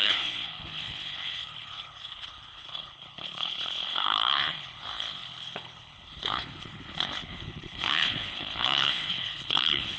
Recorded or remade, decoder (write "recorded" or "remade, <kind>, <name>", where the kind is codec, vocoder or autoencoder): remade, codec, HILCodec